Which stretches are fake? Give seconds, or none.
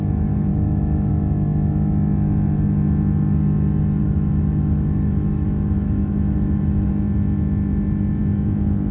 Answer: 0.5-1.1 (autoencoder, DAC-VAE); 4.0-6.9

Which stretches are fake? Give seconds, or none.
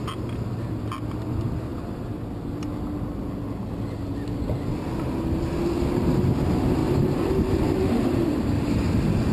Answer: 6.8-8.3 (vocoder, BigVGAN v2)